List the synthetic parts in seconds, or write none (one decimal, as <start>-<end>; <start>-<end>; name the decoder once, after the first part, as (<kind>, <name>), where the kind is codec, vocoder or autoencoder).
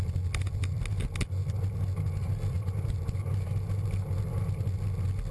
none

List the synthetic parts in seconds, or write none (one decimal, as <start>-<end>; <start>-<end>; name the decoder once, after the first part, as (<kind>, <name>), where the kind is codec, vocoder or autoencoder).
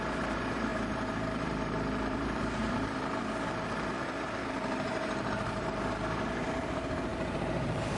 0.0-8.0 (vocoder, BigVGAN v2)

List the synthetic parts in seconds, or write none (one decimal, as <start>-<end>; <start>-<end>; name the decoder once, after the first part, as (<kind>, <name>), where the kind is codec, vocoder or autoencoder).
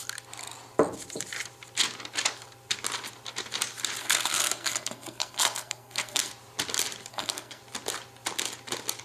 4.0-6.3 (codec, SNAC); 7.1-7.6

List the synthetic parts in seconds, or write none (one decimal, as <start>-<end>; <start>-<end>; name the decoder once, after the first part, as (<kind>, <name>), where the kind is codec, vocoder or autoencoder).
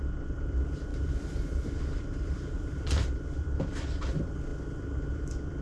0.9-2.8 (vocoder, BigVGAN v2)